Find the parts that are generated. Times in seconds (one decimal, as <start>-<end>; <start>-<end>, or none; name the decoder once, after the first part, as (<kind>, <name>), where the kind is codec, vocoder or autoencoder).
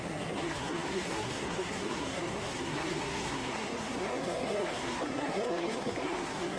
0.0-6.6 (codec, SNAC)